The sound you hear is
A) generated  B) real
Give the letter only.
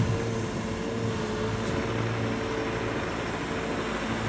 B